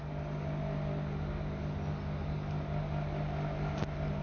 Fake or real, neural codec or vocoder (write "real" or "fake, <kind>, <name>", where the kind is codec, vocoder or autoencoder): real